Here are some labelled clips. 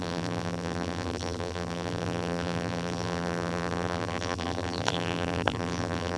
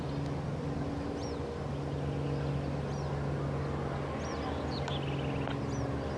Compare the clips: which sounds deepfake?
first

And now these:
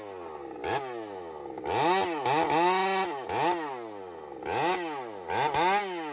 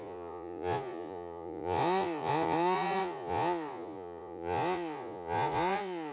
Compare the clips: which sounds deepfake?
second